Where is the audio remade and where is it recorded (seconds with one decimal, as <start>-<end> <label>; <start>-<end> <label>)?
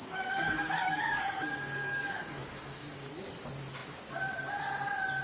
0.0-3.1 remade; 3.1-5.2 recorded